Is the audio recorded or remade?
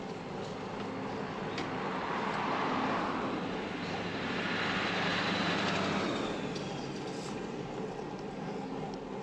recorded